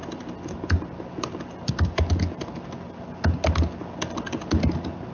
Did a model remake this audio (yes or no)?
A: no